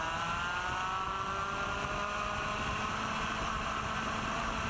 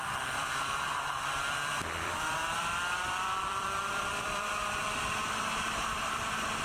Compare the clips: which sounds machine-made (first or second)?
second